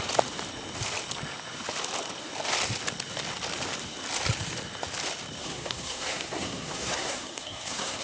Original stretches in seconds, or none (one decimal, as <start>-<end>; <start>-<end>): 0.0-5.4